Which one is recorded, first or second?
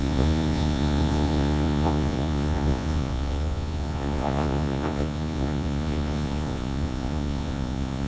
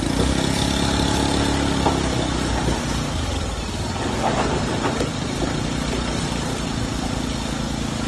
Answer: second